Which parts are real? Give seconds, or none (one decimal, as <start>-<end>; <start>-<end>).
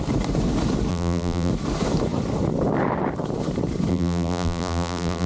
0.0-0.9; 1.5-3.9